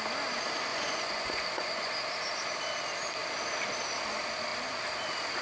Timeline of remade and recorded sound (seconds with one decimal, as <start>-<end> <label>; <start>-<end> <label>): 0.0-0.7 recorded; 0.7-1.9 remade; 1.9-5.4 recorded